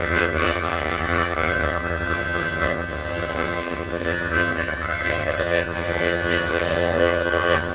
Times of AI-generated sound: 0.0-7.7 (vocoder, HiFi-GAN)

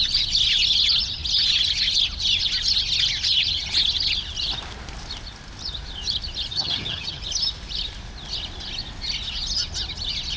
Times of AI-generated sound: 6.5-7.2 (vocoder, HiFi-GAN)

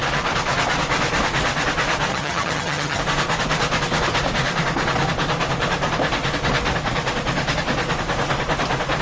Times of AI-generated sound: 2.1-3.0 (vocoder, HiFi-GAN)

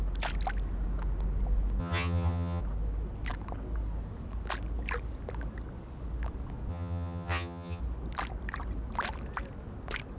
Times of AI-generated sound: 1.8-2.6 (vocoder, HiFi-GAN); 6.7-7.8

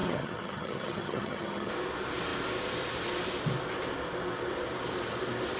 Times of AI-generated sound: 0.0-1.7 (vocoder, HiFi-GAN)